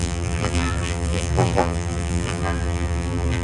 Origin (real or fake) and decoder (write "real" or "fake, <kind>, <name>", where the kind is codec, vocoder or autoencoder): fake, vocoder, BigVGAN v2